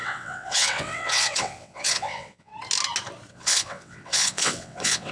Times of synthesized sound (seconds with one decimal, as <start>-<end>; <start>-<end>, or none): 0.0-2.5; 3.3-5.1